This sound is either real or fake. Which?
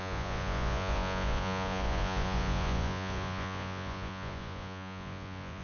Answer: fake